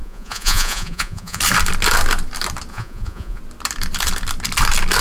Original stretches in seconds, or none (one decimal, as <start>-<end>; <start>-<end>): 1.4-2.7; 3.4-5.0